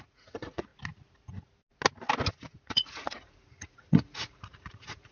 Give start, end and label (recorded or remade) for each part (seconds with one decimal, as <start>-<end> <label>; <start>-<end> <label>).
0.0-0.7 remade; 0.7-2.3 recorded; 2.3-5.1 remade